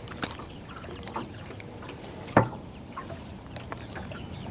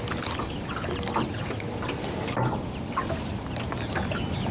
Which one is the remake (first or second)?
first